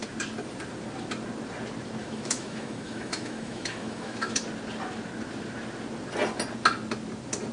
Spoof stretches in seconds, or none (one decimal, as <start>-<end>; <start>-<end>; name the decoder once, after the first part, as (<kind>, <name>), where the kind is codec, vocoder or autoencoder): 2.0-4.4 (autoencoder, DAC-VAE)